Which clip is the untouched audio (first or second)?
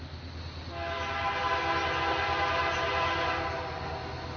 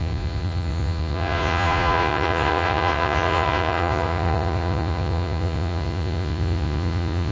first